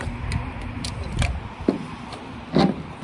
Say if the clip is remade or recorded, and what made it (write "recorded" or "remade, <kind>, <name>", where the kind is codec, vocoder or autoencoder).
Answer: recorded